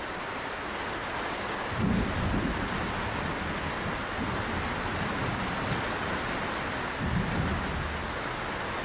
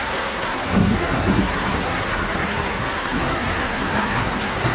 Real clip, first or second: first